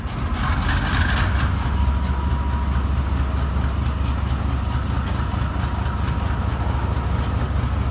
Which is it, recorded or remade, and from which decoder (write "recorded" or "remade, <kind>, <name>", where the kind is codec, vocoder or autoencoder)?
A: recorded